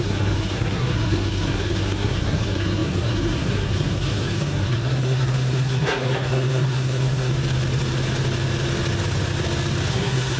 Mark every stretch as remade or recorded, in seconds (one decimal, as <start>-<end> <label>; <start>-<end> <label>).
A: 0.0-7.3 remade; 7.3-9.9 recorded; 9.9-10.4 remade